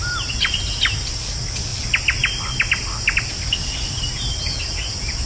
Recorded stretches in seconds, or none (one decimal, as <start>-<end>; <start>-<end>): 0.0-5.3